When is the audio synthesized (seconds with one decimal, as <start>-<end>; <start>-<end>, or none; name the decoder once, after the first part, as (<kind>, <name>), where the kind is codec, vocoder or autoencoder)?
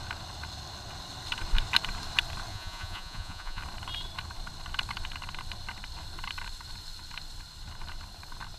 2.5-3.6 (vocoder, Vocos)